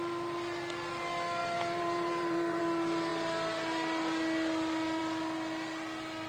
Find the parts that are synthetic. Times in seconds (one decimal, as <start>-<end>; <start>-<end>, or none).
1.4-2.6